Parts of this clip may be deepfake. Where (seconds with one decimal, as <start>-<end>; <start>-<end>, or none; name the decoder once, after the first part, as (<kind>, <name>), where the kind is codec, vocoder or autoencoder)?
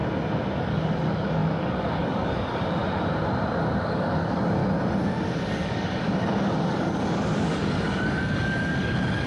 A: 0.6-2.8 (codec, DAC); 3.6-4.6; 5.5-9.3